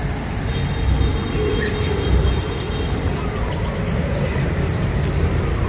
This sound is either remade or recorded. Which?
recorded